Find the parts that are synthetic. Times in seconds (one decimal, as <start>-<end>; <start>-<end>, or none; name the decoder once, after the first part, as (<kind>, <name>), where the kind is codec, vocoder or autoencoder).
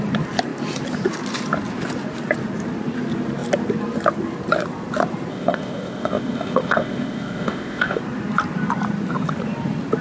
5.3-8.0 (codec, ZipCodec)